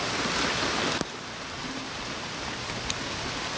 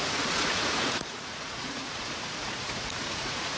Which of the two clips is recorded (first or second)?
first